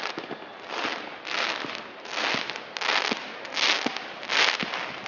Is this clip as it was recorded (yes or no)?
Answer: yes